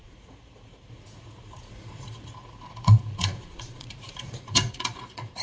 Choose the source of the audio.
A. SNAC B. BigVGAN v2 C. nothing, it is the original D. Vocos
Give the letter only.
D